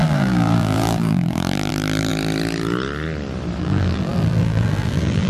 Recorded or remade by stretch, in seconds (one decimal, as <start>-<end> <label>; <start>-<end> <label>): 0.0-2.1 remade; 2.1-3.6 recorded; 3.6-5.3 remade

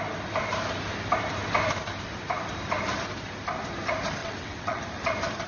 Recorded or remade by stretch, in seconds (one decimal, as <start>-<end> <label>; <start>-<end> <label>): 0.0-4.2 recorded; 4.2-4.8 remade; 4.8-5.5 recorded

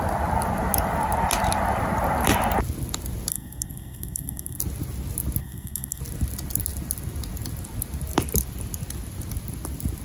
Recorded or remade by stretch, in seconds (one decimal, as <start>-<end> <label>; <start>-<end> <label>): 0.0-3.3 recorded; 3.3-4.6 remade; 4.6-5.4 recorded; 5.4-6.0 remade; 6.0-10.0 recorded

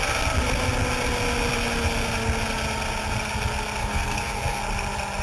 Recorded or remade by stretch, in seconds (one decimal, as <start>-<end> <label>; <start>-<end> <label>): 0.0-3.8 recorded; 3.8-4.6 remade; 4.6-5.2 recorded

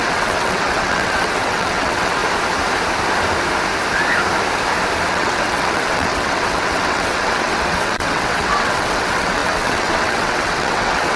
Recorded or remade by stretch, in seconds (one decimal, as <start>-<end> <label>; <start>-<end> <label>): 0.0-2.2 remade; 2.2-5.1 recorded; 5.1-11.2 remade

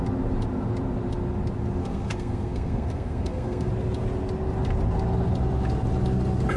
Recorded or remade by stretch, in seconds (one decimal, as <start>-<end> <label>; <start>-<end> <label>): 0.0-1.8 recorded; 1.8-3.7 remade; 3.7-6.6 recorded

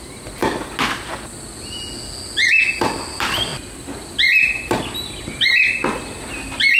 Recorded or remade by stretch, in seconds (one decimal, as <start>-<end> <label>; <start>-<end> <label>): 0.0-0.4 remade; 0.4-3.1 recorded; 3.1-3.5 remade; 3.5-4.8 recorded; 4.8-5.8 remade; 5.8-6.8 recorded